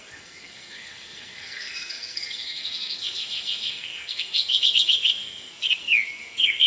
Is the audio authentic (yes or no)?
no